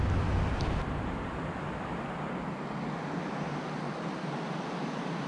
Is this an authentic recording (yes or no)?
yes